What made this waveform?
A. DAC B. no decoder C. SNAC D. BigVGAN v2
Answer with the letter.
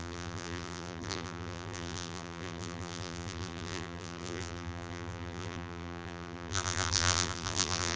D